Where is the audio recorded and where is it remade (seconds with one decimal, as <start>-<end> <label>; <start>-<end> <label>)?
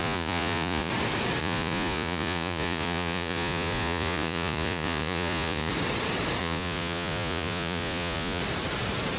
0.0-0.9 remade; 0.9-1.4 recorded; 1.4-5.7 remade; 5.7-6.4 recorded; 6.4-8.4 remade; 8.4-9.2 recorded